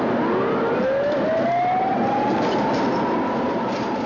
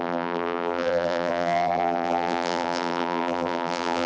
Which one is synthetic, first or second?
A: second